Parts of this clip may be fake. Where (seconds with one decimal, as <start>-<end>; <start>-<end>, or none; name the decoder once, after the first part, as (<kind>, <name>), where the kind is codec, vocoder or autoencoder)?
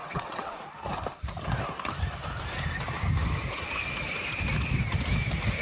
0.0-0.5 (vocoder, WaveNeXt)